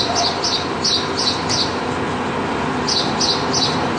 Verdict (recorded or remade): recorded